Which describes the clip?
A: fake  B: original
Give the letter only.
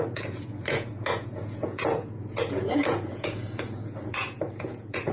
A